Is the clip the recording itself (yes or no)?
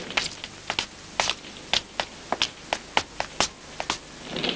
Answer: yes